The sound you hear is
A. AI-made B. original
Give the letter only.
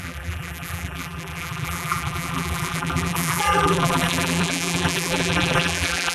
A